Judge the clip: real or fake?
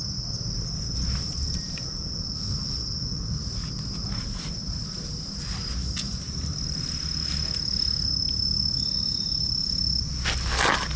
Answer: real